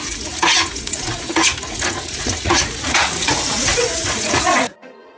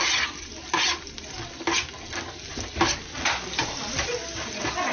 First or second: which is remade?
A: first